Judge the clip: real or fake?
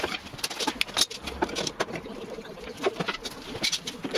real